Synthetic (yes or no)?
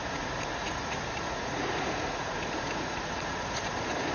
yes